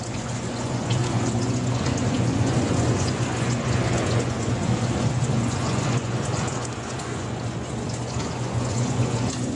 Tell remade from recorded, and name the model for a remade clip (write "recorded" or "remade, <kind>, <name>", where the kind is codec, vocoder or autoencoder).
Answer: remade, vocoder, Vocos